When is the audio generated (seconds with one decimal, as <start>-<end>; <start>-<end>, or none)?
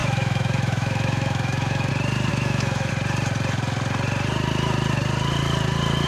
0.0-1.9; 2.3-2.9